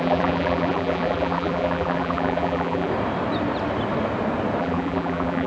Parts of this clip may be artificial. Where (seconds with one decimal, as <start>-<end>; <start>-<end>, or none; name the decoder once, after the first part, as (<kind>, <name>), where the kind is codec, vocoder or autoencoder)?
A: 0.0-2.9 (vocoder, BigVGAN v2); 4.6-5.5